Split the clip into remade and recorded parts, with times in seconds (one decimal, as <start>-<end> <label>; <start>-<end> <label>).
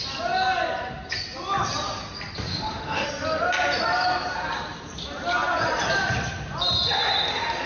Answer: 0.0-2.5 recorded; 2.5-3.1 remade; 3.1-7.7 recorded